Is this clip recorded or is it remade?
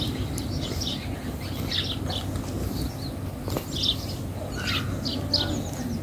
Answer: recorded